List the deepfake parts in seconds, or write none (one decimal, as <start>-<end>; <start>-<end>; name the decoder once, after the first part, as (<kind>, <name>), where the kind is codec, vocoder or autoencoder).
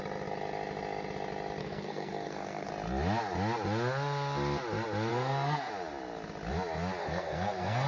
1.6-2.7 (codec, SNAC); 5.1-5.7; 7.0-7.9